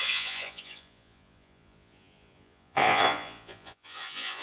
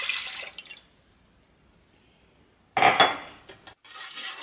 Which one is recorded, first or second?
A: second